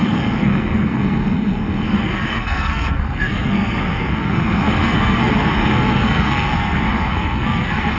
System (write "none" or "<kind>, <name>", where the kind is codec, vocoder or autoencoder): codec, SNAC